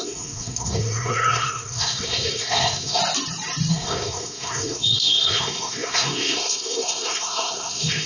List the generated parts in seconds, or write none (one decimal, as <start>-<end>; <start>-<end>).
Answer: 0.0-3.0; 3.7-8.1